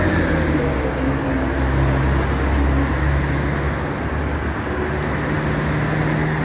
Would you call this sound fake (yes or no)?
no